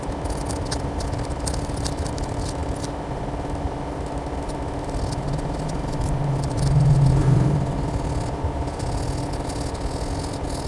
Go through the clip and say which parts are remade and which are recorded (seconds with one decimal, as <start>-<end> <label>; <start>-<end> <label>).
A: 0.0-10.7 recorded

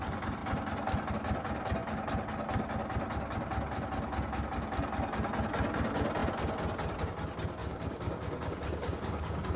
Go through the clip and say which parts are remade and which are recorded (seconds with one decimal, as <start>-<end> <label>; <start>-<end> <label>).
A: 0.0-7.6 recorded; 7.6-9.6 remade

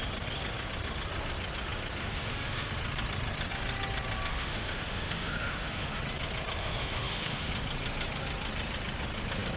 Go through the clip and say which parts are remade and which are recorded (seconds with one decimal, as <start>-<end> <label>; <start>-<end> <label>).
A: 0.0-2.0 recorded; 2.0-2.7 remade; 2.7-4.3 recorded; 4.3-6.0 remade; 6.0-6.6 recorded; 6.6-7.5 remade; 7.5-9.6 recorded